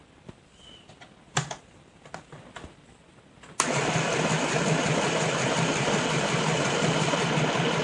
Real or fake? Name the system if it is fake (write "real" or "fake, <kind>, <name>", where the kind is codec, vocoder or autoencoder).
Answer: real